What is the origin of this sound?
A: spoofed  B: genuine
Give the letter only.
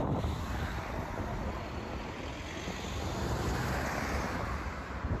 B